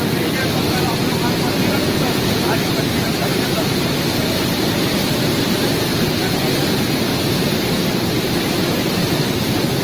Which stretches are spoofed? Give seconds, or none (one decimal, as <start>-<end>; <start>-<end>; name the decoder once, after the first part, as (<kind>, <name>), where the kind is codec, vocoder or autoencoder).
1.6-2.4 (vocoder, Vocos)